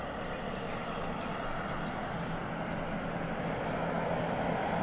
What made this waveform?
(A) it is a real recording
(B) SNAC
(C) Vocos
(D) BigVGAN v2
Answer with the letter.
A